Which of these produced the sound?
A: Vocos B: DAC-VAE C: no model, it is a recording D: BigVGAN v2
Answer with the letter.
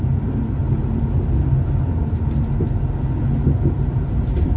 C